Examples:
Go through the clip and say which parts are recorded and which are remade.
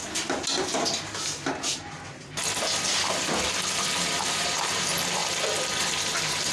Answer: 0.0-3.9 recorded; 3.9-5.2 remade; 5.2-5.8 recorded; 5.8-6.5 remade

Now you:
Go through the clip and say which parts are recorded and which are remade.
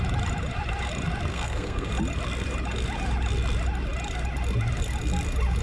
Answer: 0.0-1.3 recorded; 1.3-1.9 remade; 1.9-5.6 recorded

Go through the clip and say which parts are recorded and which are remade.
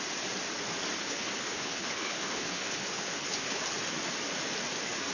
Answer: 0.0-1.0 recorded; 1.0-3.6 remade; 3.6-5.1 recorded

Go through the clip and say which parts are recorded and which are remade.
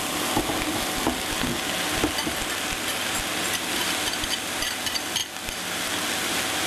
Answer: 0.0-6.7 recorded